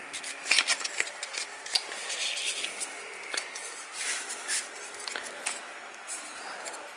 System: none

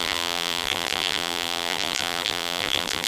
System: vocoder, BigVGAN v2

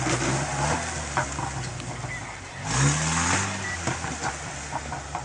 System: none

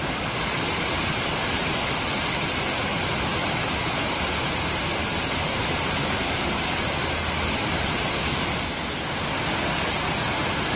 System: none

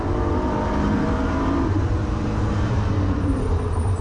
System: vocoder, BigVGAN v2